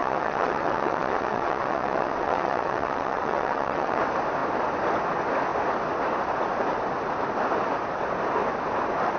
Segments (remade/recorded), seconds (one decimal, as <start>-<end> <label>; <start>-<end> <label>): 0.0-4.0 remade; 4.0-9.2 recorded